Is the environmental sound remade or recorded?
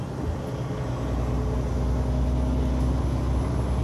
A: recorded